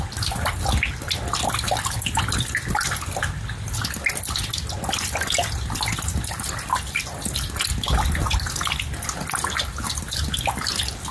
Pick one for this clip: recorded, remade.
recorded